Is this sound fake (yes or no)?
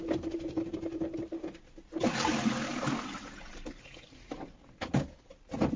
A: no